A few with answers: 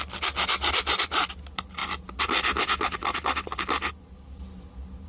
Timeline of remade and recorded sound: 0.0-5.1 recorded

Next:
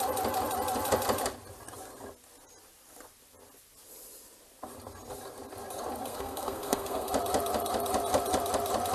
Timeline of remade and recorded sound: 0.0-6.1 recorded; 6.1-7.1 remade; 7.1-8.9 recorded

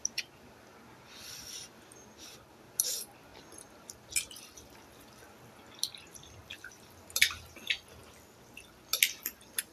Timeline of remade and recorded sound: 0.0-8.0 remade; 8.0-9.2 recorded; 9.2-9.7 remade